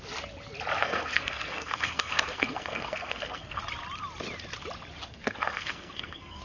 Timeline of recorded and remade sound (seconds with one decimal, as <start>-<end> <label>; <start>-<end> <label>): 0.0-0.8 recorded; 0.8-3.6 remade; 3.6-5.1 recorded; 5.1-6.4 remade